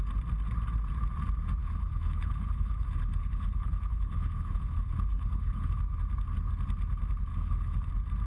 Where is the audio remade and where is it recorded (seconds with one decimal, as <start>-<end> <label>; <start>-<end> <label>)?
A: 0.0-1.6 recorded; 1.6-5.8 remade; 5.8-7.3 recorded; 7.3-7.9 remade; 7.9-8.3 recorded